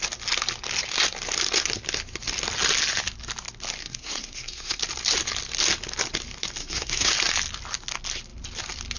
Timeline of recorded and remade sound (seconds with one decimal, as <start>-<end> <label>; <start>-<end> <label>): 0.0-3.8 recorded; 3.8-4.8 remade; 4.8-6.6 recorded; 6.6-7.1 remade; 7.1-9.0 recorded